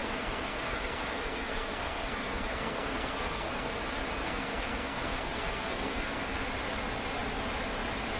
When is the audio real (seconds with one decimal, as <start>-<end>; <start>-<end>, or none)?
3.7-4.2; 6.5-8.2